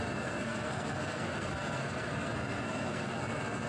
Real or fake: fake